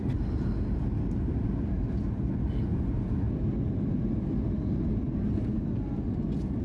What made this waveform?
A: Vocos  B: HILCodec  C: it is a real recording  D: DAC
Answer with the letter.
C